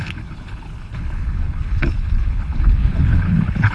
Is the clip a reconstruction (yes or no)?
yes